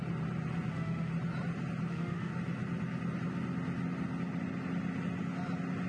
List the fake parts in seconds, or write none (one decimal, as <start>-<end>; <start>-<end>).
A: 0.7-1.1; 1.9-2.3